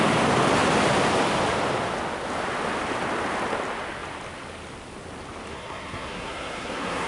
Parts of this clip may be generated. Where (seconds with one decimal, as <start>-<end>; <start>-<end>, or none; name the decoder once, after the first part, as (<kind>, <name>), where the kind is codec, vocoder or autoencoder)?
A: 5.5-7.1 (codec, SNAC)